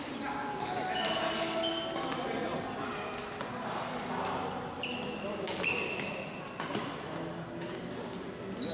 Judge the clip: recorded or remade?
recorded